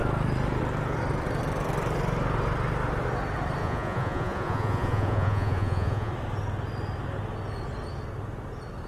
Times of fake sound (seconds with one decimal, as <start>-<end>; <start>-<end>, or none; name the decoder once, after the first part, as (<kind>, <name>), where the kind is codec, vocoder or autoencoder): 3.6-6.1 (vocoder, Vocos)